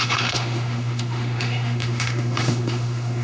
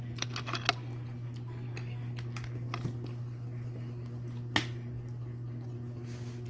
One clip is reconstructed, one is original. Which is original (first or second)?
second